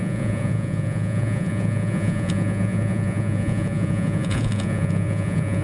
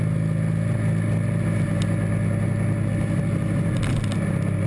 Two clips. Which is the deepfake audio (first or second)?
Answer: first